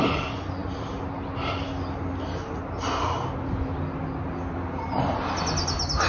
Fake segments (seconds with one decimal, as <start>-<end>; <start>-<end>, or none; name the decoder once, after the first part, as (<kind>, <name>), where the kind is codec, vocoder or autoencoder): none